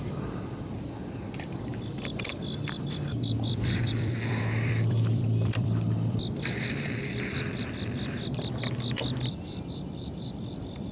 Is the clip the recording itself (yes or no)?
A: no